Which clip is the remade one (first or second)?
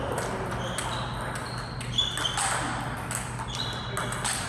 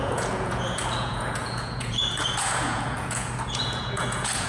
second